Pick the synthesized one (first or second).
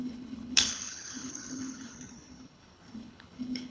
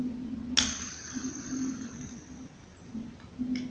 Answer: first